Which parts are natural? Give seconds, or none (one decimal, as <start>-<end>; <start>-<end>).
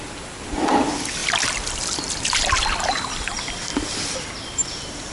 0.0-1.2; 4.3-5.1